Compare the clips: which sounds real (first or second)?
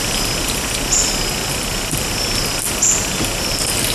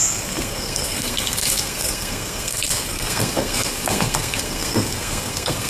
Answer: first